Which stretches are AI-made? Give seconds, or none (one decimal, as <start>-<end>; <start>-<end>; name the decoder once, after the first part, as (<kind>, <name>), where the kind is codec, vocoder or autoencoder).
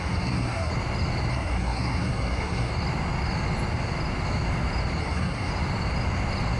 0.0-0.7 (codec, SNAC); 1.3-2.7; 5.0-5.5